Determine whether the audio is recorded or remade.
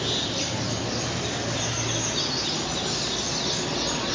recorded